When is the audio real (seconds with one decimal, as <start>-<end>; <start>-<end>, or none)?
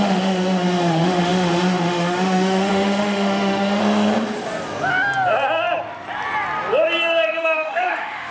3.8-7.4